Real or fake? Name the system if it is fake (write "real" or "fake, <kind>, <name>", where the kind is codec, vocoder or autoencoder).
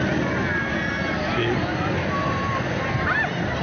real